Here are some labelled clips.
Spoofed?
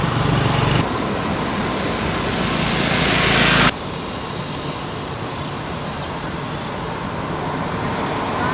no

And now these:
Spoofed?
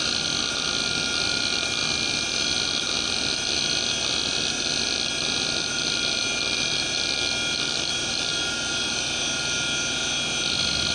no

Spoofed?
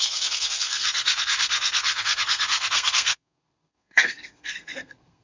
yes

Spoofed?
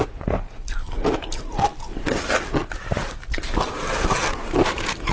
no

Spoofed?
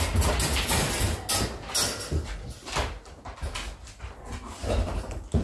no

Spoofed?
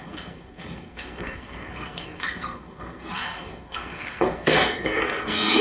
yes